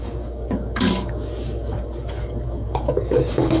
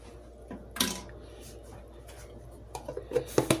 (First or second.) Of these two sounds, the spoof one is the first